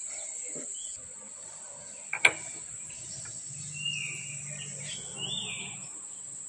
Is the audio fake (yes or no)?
no